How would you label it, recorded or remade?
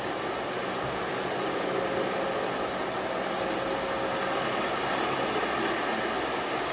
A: recorded